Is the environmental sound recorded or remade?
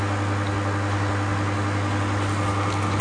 recorded